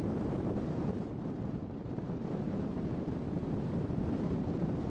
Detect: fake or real fake